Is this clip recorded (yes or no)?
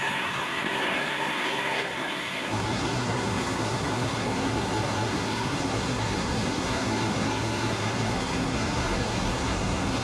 no